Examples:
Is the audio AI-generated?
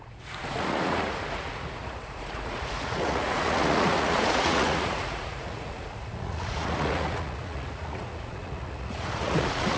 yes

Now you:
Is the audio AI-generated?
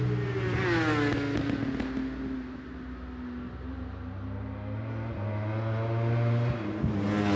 no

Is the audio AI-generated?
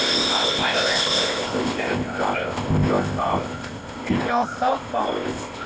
yes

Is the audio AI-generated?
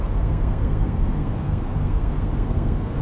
yes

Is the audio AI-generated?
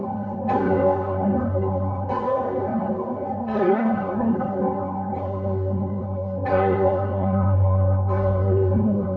yes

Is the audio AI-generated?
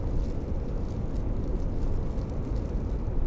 no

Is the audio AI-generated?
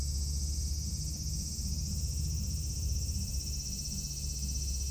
no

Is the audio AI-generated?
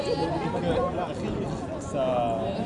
no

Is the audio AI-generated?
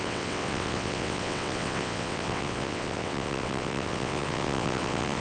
yes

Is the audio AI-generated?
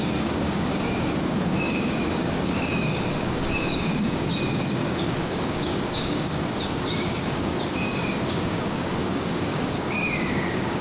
yes